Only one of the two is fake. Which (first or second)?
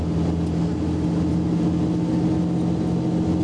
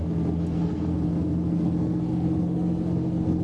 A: second